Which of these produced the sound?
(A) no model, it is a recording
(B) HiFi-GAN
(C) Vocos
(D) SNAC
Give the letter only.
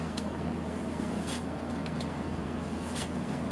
D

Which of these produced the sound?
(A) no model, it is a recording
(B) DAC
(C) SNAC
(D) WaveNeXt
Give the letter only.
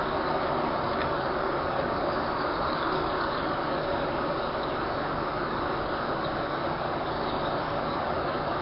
B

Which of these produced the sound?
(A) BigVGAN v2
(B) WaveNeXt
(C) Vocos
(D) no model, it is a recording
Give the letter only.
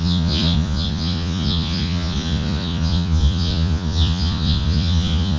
C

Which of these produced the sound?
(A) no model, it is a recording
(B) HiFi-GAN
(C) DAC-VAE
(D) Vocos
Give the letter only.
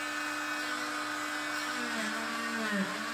A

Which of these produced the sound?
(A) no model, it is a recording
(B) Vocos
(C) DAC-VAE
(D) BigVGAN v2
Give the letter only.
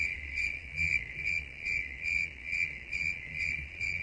B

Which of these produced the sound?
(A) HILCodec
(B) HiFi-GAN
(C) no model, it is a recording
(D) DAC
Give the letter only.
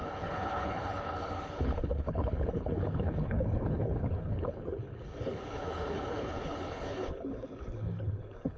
A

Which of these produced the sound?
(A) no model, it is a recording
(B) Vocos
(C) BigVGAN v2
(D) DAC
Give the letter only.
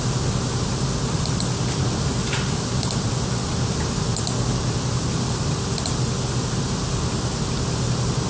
A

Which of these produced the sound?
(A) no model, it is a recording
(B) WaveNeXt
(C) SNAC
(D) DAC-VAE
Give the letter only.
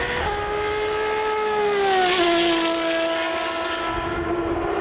A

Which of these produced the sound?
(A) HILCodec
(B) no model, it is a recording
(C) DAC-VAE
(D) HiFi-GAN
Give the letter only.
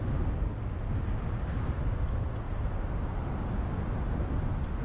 B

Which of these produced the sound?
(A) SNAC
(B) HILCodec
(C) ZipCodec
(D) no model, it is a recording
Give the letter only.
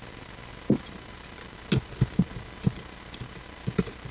D